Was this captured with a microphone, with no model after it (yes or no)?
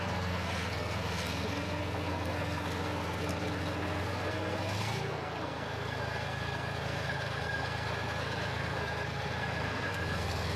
no